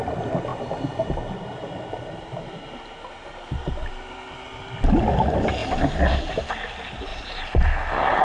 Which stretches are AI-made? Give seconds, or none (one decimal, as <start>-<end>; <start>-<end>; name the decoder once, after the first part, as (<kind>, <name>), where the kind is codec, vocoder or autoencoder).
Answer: 0.5-3.9 (vocoder, BigVGAN v2); 5.6-6.4; 7.1-7.6